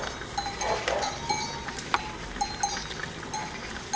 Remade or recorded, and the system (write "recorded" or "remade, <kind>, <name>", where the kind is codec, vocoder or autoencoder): recorded